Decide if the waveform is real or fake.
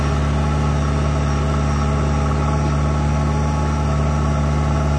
real